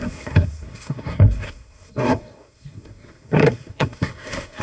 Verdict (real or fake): fake